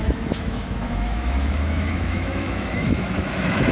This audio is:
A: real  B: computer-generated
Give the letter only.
B